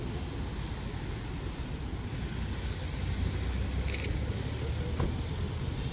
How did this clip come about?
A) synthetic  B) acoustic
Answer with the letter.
B